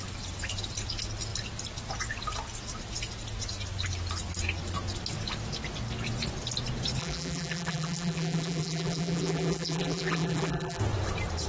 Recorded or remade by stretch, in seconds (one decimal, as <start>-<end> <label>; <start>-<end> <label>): 0.0-7.0 recorded; 7.0-10.8 remade; 10.8-11.5 recorded